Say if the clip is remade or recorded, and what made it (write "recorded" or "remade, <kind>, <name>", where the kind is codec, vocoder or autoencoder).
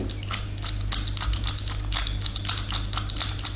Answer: recorded